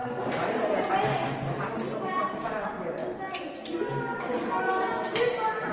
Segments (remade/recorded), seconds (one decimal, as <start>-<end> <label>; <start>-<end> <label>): 0.0-5.7 recorded